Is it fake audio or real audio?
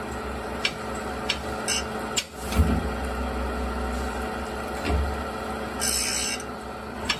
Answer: real